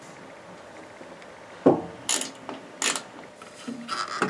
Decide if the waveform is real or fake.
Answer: real